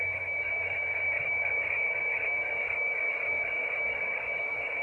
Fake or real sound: fake